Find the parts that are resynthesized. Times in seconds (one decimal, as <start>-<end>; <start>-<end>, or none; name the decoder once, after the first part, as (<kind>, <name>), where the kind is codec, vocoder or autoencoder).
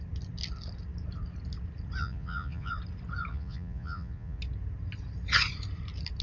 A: 2.0-2.7 (vocoder, Vocos); 3.3-4.4